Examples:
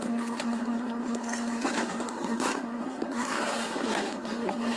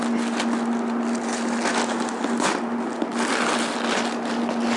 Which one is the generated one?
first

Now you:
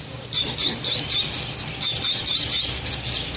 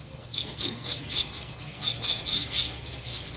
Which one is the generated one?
second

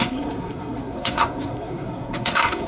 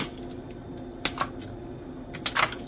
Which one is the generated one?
first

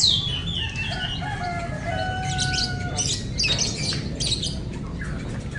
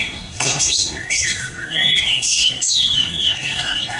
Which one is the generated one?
second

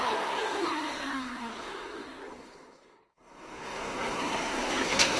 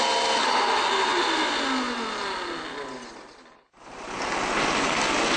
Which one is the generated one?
first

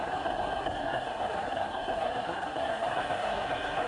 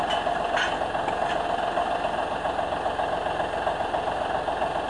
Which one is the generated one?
first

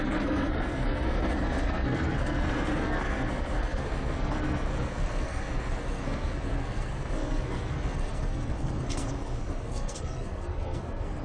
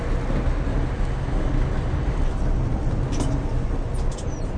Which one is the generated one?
first